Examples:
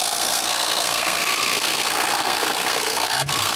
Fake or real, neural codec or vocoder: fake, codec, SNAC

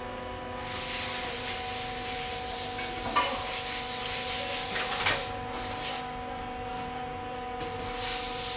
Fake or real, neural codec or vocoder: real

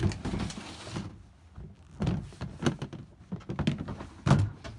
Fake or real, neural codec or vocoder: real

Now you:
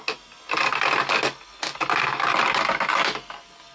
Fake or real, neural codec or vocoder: real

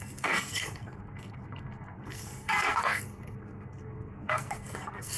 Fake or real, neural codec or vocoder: fake, codec, SNAC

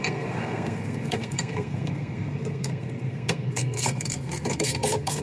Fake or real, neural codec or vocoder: fake, codec, SNAC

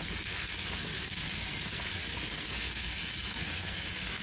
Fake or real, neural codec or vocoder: fake, codec, SNAC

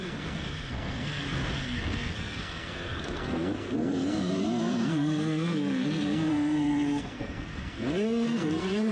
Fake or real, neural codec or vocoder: fake, codec, SNAC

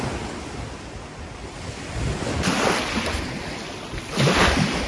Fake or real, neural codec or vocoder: real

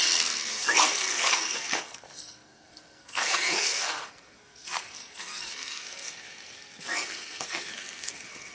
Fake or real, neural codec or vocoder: fake, codec, SNAC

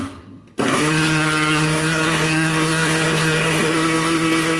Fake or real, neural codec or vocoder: fake, codec, SNAC